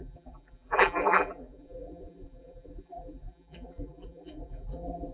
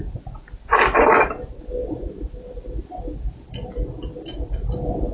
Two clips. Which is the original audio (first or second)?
second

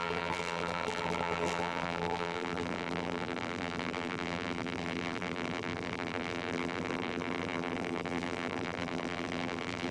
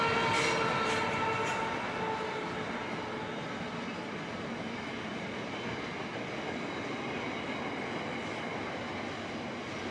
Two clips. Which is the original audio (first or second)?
second